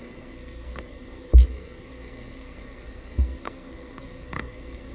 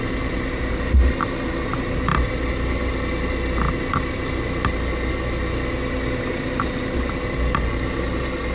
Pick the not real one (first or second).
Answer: first